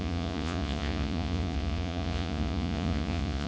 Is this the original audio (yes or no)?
no